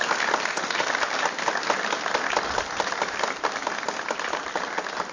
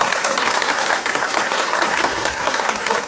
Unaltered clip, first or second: first